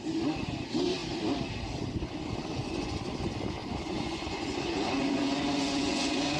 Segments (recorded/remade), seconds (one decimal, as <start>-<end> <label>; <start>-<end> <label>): 0.0-2.4 recorded; 2.4-3.0 remade; 3.0-3.6 recorded; 3.6-6.4 remade